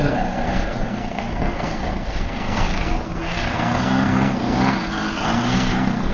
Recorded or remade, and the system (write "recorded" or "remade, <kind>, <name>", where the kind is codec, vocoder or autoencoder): remade, codec, SNAC